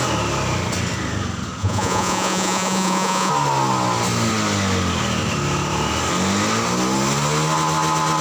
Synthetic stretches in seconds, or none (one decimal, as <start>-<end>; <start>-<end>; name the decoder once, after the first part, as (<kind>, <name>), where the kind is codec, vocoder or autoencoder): 1.6-3.3 (vocoder, Vocos)

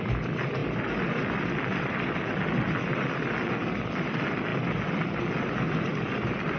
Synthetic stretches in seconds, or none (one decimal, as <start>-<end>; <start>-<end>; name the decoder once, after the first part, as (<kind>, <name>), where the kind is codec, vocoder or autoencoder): none

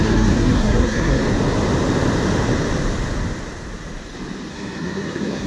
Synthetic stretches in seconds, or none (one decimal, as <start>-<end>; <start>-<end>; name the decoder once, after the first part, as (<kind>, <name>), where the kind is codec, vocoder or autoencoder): 0.0-1.2 (codec, SNAC); 4.5-5.5

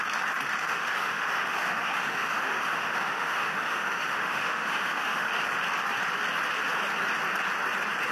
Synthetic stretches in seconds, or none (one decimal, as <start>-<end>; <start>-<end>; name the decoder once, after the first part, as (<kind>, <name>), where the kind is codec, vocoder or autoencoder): 0.6-5.3 (autoencoder, DAC-VAE)

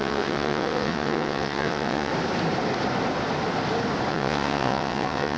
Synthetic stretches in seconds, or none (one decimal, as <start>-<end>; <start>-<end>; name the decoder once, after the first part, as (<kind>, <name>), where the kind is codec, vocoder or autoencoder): 0.0-2.1 (vocoder, WaveNeXt); 4.1-5.4

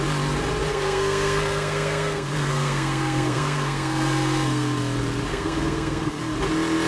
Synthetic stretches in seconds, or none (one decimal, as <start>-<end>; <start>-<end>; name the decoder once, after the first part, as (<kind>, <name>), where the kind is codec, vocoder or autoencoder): 0.7-4.8 (codec, SNAC); 5.3-6.2

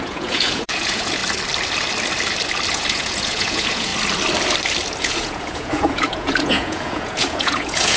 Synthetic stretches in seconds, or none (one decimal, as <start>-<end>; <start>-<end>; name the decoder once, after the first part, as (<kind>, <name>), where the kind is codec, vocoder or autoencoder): 0.0-1.2 (vocoder, Vocos); 2.7-3.9; 5.0-8.0

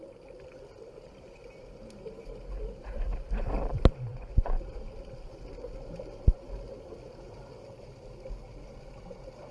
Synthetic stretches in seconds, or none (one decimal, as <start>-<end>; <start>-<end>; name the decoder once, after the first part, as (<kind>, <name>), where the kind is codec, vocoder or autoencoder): 4.1-4.6 (vocoder, Vocos)